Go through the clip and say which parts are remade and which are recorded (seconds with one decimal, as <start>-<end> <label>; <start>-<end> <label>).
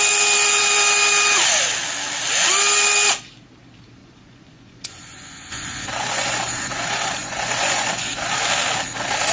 0.0-4.0 recorded; 4.0-8.3 remade; 8.3-9.3 recorded